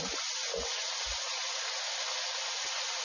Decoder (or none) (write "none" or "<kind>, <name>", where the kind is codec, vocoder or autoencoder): none